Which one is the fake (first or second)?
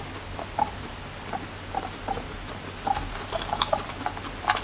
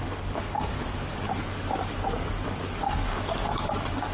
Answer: second